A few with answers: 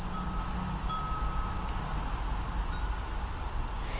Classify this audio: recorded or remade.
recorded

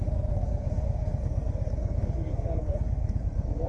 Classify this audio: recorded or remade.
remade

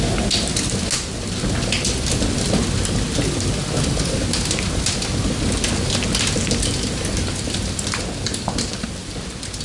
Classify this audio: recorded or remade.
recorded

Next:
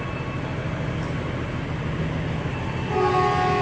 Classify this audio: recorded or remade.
recorded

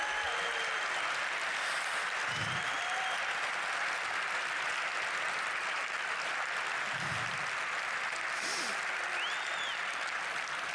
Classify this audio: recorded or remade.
recorded